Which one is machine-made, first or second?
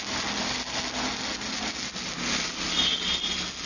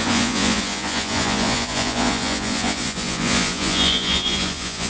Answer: second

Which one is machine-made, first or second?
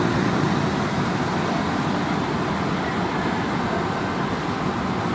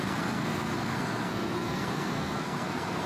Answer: second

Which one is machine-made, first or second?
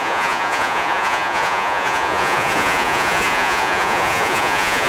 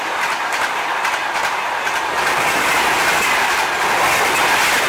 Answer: first